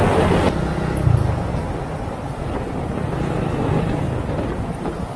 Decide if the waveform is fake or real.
real